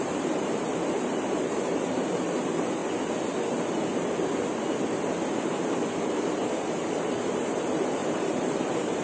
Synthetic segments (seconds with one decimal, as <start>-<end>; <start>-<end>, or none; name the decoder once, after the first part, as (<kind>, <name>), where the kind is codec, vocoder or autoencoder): 0.0-2.8 (vocoder, BigVGAN v2); 6.0-9.0